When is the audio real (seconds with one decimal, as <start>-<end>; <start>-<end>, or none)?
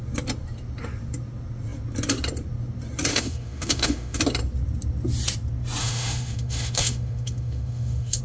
0.0-3.1; 4.2-5.8